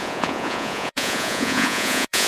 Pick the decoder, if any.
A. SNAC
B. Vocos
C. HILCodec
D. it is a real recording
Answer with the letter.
B